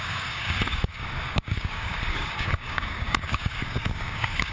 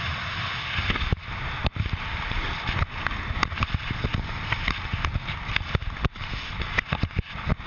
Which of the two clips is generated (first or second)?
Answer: first